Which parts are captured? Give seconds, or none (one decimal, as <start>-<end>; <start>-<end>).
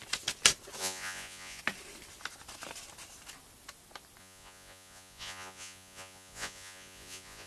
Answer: 0.0-0.8; 1.6-4.2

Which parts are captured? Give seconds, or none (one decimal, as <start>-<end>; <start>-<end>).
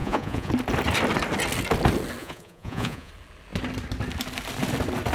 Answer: 0.5-2.2; 3.1-5.1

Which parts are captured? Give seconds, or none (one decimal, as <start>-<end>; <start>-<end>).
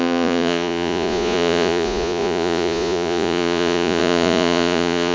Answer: none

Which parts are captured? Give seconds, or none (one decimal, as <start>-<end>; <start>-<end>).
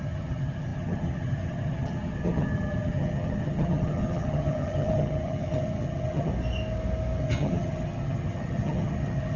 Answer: 6.3-7.2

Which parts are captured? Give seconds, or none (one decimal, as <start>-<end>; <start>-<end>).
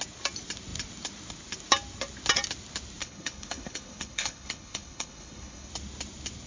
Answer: 0.0-3.0; 5.7-6.5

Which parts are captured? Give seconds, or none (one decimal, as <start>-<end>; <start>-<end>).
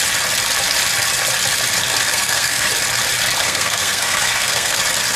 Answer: 0.0-2.1; 2.7-3.4; 4.8-5.2